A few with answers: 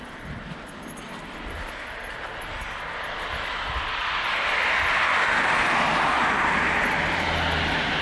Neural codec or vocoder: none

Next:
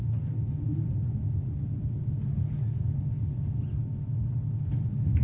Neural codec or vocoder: none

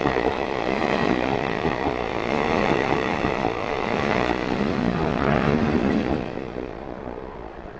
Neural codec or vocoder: vocoder, Vocos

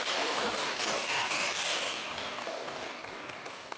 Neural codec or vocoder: codec, DAC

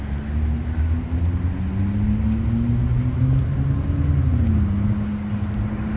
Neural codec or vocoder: none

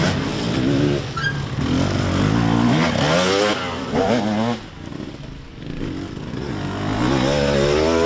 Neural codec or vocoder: none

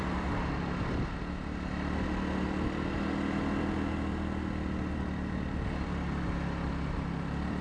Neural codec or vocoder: none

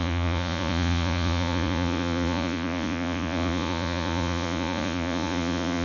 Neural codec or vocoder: vocoder, Vocos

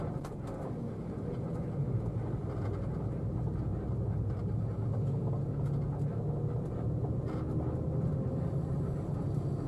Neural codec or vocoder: none